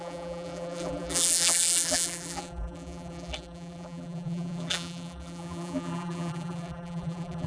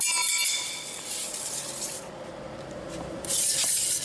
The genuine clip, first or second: second